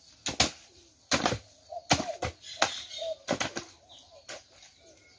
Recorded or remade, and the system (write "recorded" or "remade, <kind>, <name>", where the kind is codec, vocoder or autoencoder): recorded